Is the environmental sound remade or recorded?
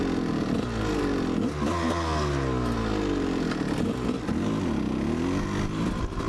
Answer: recorded